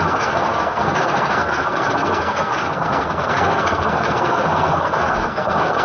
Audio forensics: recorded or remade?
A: remade